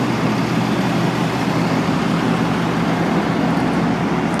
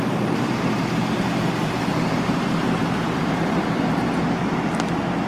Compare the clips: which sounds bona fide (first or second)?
first